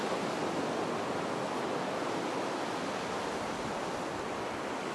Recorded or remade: recorded